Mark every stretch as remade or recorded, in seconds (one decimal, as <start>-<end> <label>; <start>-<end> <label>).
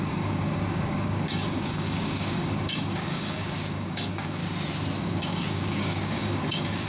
0.0-4.4 remade; 4.4-5.0 recorded; 5.0-6.9 remade